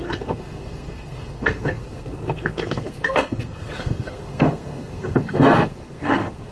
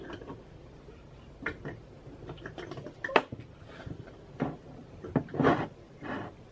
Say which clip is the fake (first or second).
first